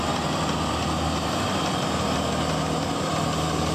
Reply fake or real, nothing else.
real